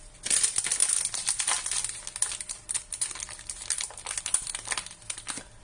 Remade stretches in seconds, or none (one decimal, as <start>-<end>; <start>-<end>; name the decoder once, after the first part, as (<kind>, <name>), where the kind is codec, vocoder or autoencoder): none